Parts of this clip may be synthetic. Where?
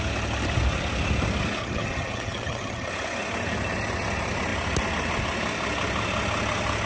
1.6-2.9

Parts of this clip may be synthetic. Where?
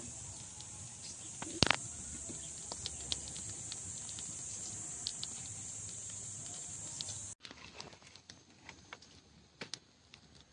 5.1-6.7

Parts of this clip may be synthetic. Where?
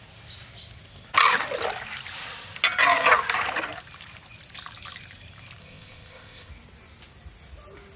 5.6-6.5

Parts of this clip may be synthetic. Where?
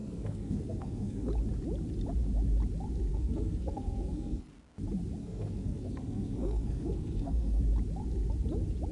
0.0-1.3; 3.1-4.5; 5.2-7.6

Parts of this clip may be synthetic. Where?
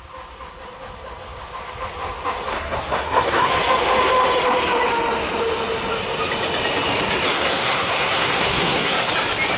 2.5-3.5; 7.3-9.1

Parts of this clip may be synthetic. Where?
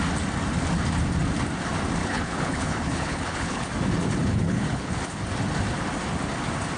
2.0-3.7; 4.2-4.9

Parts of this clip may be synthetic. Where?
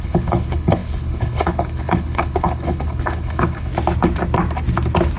0.0-3.7